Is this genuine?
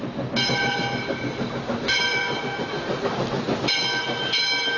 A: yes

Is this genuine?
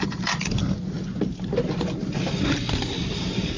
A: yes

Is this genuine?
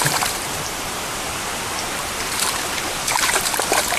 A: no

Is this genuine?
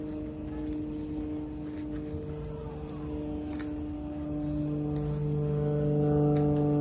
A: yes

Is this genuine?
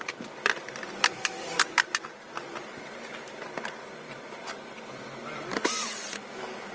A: no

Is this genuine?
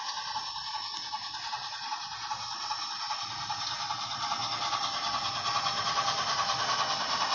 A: yes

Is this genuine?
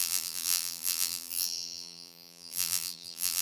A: no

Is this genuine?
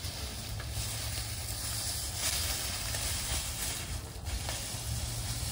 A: yes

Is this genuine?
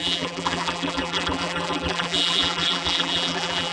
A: no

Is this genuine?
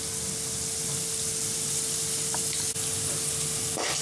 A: yes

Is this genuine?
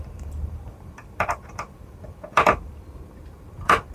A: no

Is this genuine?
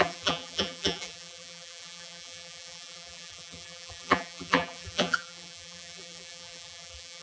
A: no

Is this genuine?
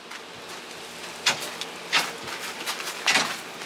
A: yes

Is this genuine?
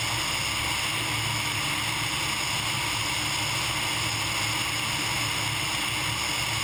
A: yes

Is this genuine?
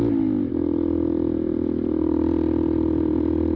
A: yes